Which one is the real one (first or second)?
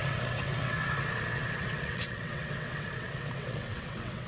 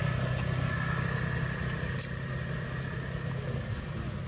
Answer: second